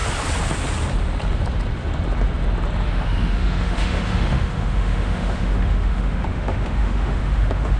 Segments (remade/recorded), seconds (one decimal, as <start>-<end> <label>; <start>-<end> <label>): 0.0-2.8 recorded; 2.8-7.8 remade